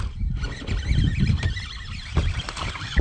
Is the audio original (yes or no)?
yes